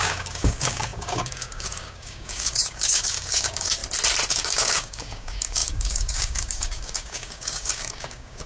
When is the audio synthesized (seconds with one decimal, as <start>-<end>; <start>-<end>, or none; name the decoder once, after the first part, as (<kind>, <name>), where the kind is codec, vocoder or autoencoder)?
0.0-3.8 (codec, DAC); 4.3-8.5